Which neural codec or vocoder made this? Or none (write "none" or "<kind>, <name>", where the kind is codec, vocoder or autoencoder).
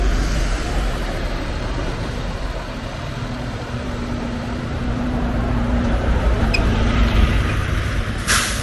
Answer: vocoder, BigVGAN v2